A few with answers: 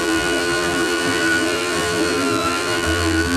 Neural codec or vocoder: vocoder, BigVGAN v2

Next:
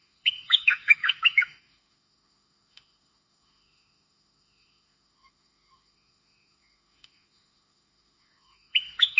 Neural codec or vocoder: autoencoder, DAC-VAE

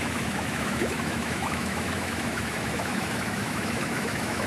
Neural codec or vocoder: autoencoder, DAC-VAE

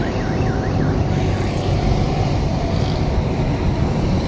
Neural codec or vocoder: none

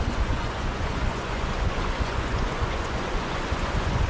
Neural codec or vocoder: vocoder, Vocos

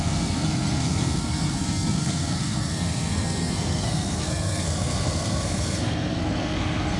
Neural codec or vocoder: codec, SNAC